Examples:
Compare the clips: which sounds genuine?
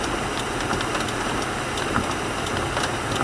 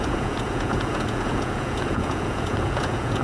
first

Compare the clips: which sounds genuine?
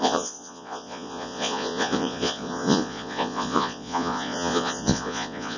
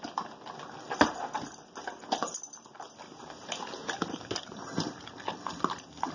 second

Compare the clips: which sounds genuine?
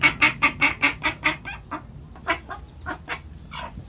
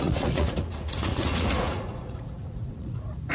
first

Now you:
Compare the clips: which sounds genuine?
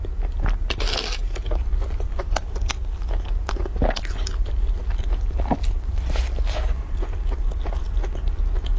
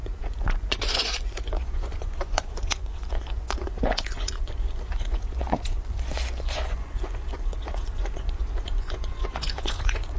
first